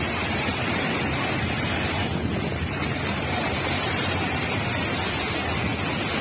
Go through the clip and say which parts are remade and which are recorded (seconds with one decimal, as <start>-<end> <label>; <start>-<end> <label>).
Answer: 0.0-0.5 recorded; 0.5-1.0 remade; 1.0-2.2 recorded; 2.2-4.7 remade; 4.7-6.2 recorded